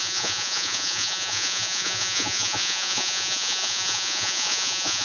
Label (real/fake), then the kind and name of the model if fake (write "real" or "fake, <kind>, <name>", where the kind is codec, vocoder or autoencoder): fake, vocoder, Vocos